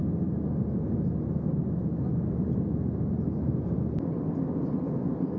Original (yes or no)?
yes